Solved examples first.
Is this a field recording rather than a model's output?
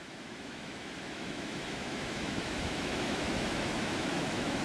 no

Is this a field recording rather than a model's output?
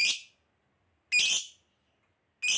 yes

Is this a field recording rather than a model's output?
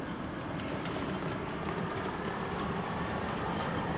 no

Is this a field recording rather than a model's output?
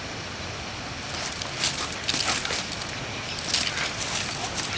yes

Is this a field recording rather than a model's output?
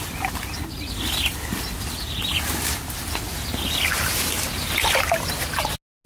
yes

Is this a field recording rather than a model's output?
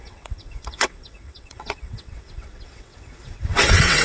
no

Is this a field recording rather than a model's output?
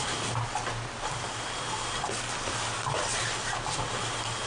yes